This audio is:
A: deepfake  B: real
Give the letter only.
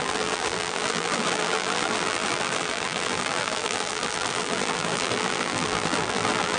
A